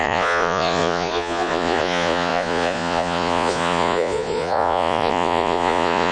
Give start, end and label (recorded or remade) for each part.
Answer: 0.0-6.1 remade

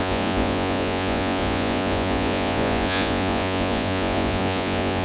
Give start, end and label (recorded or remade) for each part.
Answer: 0.0-5.0 remade

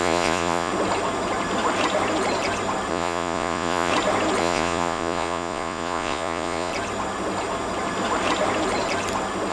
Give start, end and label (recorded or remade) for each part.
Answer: 0.0-0.7 remade; 0.7-2.9 recorded; 2.9-3.9 remade; 3.9-4.4 recorded; 4.4-6.7 remade; 6.7-9.5 recorded

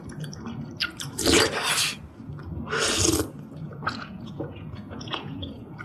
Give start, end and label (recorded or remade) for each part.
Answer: 0.0-3.6 recorded; 3.6-5.8 remade